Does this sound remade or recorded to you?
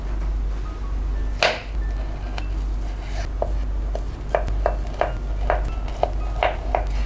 recorded